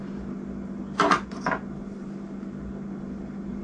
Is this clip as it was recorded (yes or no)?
yes